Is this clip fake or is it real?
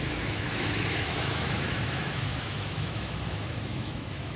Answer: fake